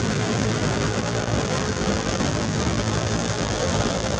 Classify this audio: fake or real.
fake